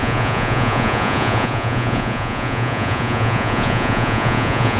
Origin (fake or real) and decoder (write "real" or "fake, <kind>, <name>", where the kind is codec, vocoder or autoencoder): fake, vocoder, Vocos